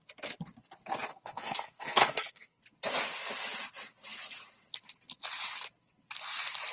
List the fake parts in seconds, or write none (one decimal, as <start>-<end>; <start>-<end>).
1.1-2.6